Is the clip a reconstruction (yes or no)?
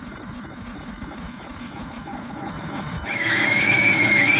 yes